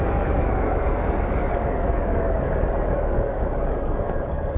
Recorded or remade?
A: remade